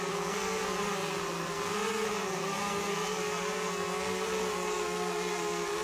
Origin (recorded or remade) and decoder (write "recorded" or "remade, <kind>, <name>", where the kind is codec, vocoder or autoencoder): remade, codec, SNAC